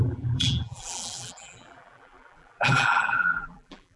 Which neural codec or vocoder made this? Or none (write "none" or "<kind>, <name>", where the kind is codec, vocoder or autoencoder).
vocoder, BigVGAN v2